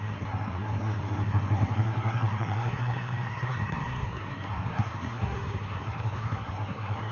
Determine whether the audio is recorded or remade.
remade